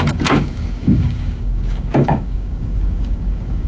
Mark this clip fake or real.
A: fake